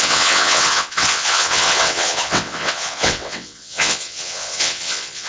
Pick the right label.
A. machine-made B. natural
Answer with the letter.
A